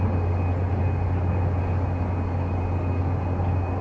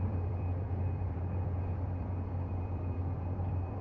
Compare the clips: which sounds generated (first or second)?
second